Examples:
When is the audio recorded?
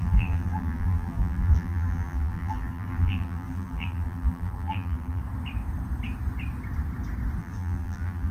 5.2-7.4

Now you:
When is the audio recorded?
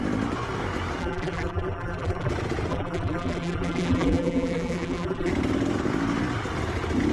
0.0-1.0; 2.3-2.7; 5.3-7.1